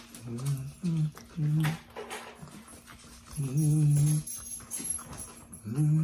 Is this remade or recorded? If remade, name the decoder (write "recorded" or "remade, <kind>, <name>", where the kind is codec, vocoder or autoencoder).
recorded